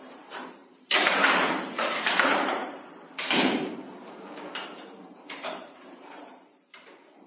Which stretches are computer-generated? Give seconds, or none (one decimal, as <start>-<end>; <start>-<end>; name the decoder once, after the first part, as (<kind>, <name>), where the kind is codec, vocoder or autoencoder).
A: 0.0-7.3 (vocoder, BigVGAN v2)